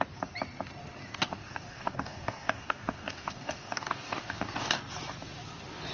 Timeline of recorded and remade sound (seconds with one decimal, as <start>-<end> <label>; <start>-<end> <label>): 0.0-1.3 recorded; 1.3-4.8 remade; 4.8-5.9 recorded